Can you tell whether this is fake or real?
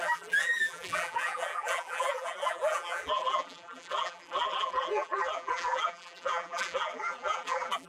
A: fake